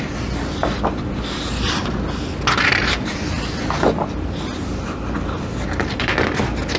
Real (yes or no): yes